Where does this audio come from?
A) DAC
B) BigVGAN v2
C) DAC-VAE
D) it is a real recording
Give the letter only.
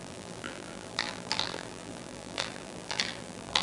B